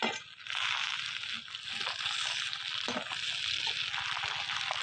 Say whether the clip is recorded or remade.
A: recorded